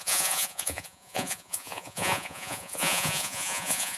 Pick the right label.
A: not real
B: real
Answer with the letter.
A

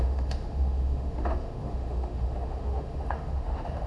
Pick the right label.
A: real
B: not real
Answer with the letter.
B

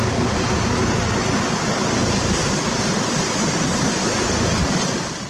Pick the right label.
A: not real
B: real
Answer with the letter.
B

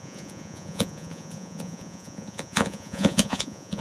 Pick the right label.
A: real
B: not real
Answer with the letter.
B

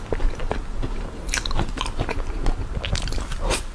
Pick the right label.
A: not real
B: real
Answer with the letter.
B